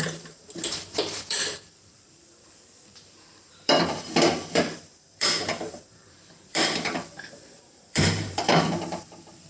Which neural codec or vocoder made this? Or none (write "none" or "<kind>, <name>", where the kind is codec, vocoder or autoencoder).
vocoder, BigVGAN v2